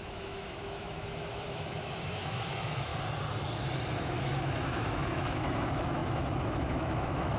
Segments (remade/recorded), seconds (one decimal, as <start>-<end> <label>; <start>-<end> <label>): 0.0-2.9 remade; 2.9-4.0 recorded; 4.0-7.4 remade

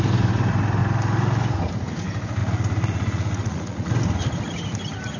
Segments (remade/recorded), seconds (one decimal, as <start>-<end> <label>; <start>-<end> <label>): 0.0-2.4 recorded; 2.4-3.9 remade; 3.9-5.2 recorded

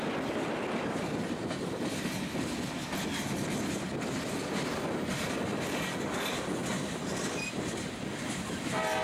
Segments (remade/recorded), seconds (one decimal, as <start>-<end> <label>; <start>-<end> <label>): 0.0-9.0 recorded